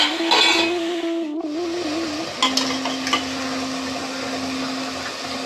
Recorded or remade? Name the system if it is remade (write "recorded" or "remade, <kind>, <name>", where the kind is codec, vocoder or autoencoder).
recorded